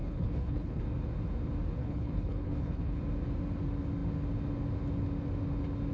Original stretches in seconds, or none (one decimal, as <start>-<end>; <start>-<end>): 0.8-1.8; 3.0-5.9